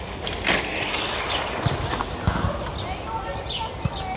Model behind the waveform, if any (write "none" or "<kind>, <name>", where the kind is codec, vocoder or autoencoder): none